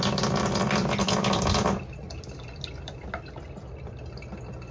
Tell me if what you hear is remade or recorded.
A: recorded